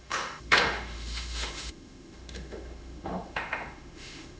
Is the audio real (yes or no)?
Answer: no